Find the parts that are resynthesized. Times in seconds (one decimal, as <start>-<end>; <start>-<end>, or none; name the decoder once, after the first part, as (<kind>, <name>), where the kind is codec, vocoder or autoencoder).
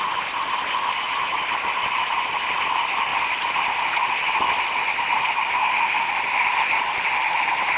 5.6-6.1 (autoencoder, DAC-VAE)